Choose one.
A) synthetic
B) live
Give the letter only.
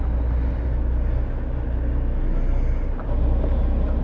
B